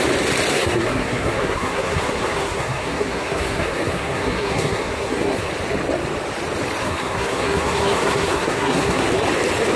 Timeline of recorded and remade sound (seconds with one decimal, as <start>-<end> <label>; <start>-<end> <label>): 0.0-0.5 recorded; 0.5-5.5 remade; 5.5-6.8 recorded; 6.8-9.1 remade; 9.1-9.8 recorded